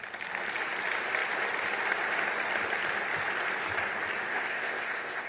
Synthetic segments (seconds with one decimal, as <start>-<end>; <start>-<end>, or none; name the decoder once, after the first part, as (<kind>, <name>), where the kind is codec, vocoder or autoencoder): 4.3-5.3 (codec, ZipCodec)